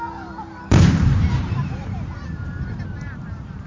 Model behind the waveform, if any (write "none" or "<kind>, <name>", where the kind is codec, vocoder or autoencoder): vocoder, BigVGAN v2